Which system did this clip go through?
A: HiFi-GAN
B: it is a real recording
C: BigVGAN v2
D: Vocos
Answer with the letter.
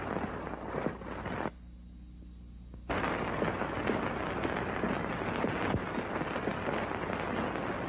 B